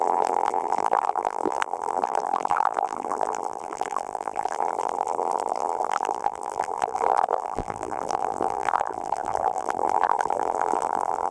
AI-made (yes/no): yes